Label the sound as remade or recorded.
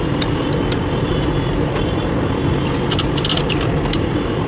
recorded